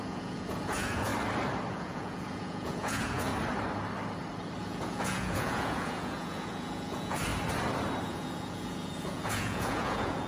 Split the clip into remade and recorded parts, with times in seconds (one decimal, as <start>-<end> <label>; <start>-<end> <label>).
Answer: 0.0-1.1 remade; 1.1-1.7 recorded; 1.7-3.3 remade; 3.3-4.6 recorded; 4.6-7.3 remade; 7.3-8.0 recorded; 8.0-10.3 remade